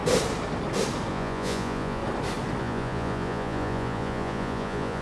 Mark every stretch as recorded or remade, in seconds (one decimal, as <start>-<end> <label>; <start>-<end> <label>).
0.0-1.1 recorded; 1.1-2.0 remade; 2.0-2.6 recorded; 2.6-5.0 remade